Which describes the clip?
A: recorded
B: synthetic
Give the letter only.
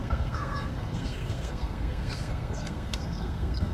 B